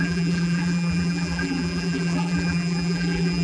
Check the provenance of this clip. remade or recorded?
remade